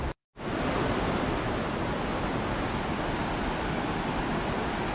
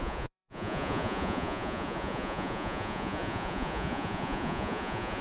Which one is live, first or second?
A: first